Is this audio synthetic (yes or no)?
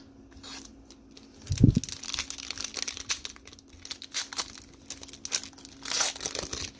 no